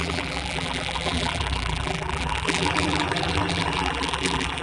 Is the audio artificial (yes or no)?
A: yes